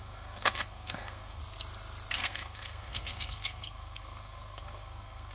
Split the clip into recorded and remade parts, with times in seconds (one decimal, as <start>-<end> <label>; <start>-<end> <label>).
0.0-1.4 remade; 1.4-2.1 recorded; 2.1-5.3 remade